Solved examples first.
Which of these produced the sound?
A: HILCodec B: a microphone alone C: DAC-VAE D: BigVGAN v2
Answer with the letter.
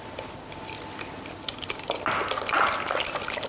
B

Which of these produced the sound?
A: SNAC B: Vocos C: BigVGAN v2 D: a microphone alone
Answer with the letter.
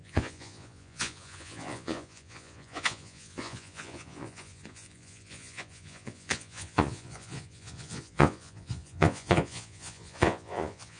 B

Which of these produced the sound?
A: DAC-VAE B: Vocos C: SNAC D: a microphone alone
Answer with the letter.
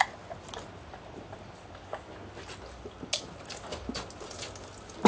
D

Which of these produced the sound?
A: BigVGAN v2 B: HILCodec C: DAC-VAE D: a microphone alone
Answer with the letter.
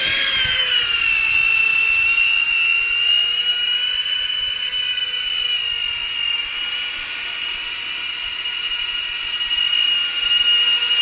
A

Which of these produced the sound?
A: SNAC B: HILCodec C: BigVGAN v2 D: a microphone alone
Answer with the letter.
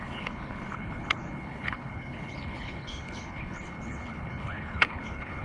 B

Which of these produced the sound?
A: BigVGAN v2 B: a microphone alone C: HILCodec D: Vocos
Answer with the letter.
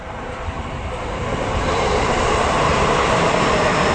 A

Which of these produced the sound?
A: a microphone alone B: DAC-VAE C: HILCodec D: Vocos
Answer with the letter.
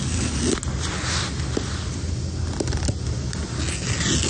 A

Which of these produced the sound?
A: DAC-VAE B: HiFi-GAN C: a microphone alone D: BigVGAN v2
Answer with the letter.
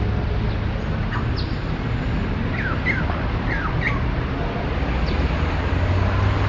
C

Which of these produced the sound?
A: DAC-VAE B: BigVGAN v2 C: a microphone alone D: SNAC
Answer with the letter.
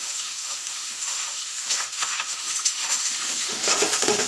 A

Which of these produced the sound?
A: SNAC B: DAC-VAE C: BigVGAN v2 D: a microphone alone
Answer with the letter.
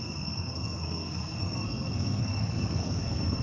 A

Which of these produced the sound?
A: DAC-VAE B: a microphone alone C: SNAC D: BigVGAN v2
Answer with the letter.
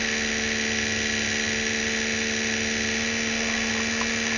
B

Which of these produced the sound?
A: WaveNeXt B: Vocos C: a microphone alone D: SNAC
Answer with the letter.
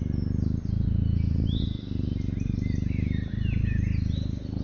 C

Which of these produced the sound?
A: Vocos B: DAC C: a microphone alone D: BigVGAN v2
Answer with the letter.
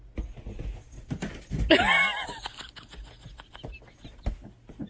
C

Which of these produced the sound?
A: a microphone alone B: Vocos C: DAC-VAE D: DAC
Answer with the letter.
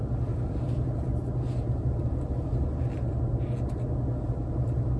A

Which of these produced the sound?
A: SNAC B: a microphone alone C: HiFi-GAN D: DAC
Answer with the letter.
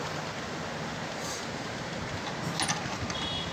B